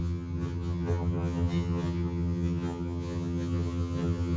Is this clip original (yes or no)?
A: no